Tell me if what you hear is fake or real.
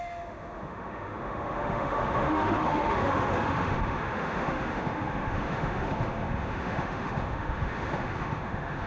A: fake